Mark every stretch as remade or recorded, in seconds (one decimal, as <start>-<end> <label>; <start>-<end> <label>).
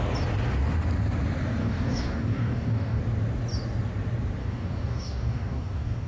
0.0-1.6 recorded; 1.6-3.0 remade; 3.0-4.4 recorded; 4.4-6.1 remade